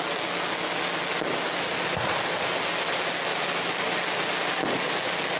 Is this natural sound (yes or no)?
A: yes